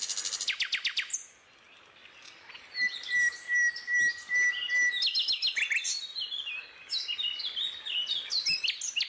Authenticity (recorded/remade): recorded